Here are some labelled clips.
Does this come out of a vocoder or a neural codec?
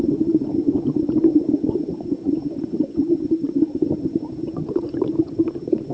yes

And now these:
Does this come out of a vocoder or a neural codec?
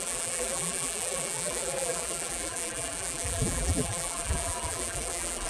yes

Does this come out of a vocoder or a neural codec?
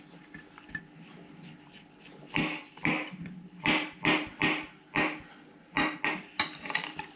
no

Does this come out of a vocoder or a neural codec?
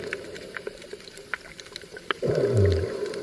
yes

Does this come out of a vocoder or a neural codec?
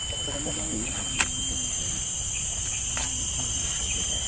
no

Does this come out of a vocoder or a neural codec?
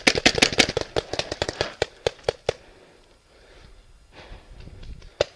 no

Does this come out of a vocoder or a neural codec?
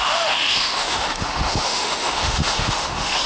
yes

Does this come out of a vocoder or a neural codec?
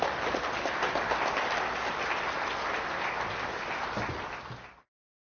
no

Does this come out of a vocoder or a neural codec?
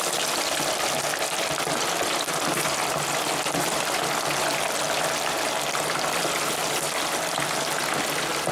no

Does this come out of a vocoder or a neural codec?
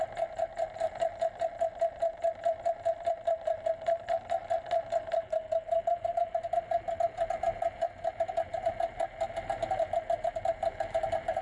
no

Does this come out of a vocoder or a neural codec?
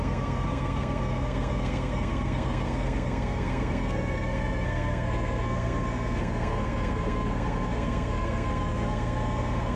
yes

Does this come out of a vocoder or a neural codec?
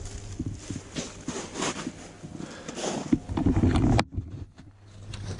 no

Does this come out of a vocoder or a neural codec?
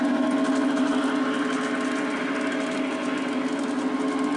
no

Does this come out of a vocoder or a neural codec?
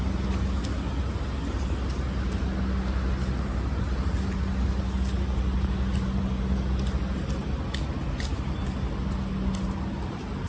no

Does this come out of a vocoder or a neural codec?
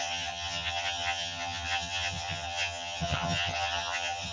yes